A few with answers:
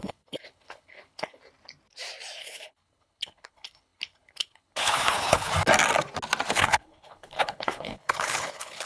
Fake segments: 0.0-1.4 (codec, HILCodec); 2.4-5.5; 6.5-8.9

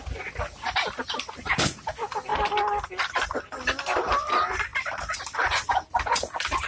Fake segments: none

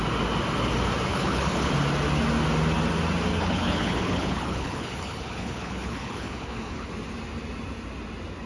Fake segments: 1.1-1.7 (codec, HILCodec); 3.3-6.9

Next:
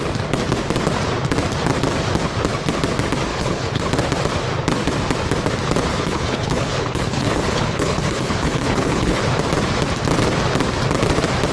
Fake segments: 3.3-3.8 (codec, HILCodec); 5.9-9.2

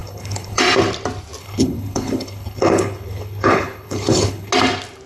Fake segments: 0.0-0.6 (codec, HILCodec); 1.4-4.5

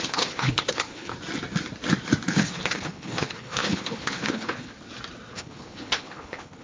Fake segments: 0.0-1.1 (codec, HILCodec); 2.3-4.7; 5.3-6.6

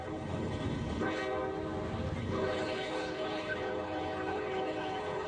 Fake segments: 0.0-1.2 (codec, HILCodec); 2.2-5.3

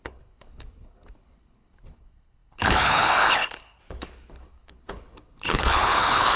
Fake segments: 0.0-6.4 (codec, HILCodec)